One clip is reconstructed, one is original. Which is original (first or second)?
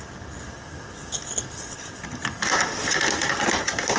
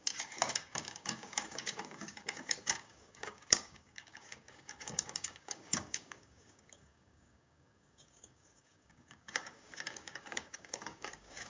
first